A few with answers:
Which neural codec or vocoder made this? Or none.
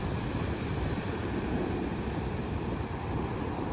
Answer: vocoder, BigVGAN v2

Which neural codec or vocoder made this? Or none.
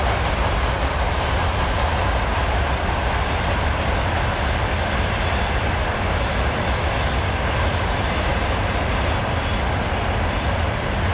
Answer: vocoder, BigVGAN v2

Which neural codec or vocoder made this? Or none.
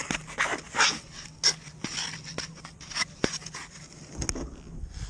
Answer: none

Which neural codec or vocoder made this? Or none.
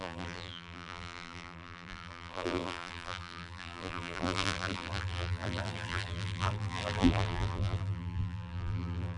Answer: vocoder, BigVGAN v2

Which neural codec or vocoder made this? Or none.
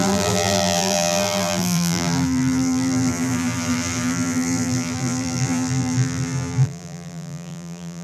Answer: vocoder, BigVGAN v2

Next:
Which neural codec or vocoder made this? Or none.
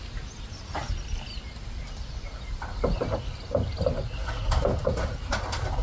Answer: none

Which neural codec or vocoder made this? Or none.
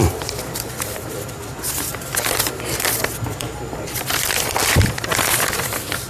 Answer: vocoder, BigVGAN v2